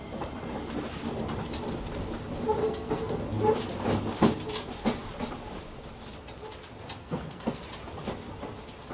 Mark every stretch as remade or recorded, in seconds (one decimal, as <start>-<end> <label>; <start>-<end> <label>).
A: 0.0-2.6 recorded; 2.6-3.2 remade; 3.2-7.0 recorded; 7.0-7.6 remade; 7.6-8.9 recorded